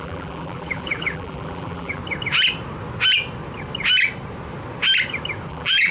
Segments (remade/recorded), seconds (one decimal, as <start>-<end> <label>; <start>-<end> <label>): 0.0-2.0 remade; 2.0-5.5 recorded; 5.5-5.9 remade

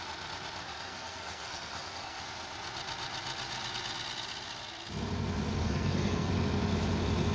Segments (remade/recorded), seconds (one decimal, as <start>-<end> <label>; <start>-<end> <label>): 0.0-0.6 recorded; 0.6-2.2 remade; 2.2-5.6 recorded; 5.6-6.3 remade; 6.3-7.3 recorded